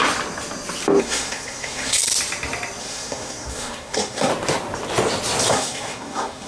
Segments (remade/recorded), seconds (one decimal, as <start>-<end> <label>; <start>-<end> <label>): 0.0-1.0 recorded; 1.0-2.0 remade; 2.0-2.8 recorded; 2.8-4.3 remade; 4.3-5.5 recorded; 5.5-6.5 remade